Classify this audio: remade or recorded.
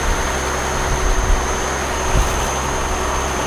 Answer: recorded